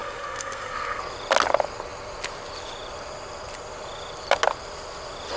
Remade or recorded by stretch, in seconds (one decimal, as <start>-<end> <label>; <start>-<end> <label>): 0.0-1.0 remade; 1.0-5.4 recorded